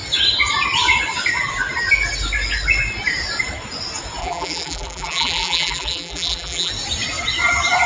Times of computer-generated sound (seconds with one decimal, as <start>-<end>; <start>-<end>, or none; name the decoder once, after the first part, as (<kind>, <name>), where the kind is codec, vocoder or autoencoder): 4.2-6.7 (vocoder, BigVGAN v2)